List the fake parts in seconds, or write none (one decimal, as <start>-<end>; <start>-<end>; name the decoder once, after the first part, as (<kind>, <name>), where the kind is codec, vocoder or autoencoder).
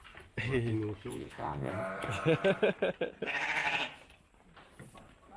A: 1.1-1.7 (vocoder, Vocos)